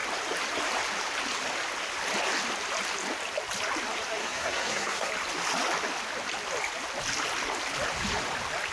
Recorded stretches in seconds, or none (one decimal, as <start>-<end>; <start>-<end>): 0.0-4.2; 5.1-8.7